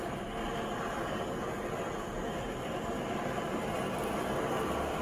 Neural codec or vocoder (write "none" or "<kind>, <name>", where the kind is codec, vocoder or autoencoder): vocoder, BigVGAN v2